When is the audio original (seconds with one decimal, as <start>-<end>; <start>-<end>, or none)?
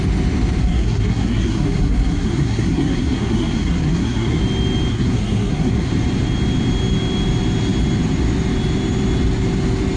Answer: 0.0-0.6; 4.4-4.9; 5.9-10.0